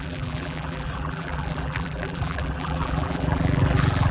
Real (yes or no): no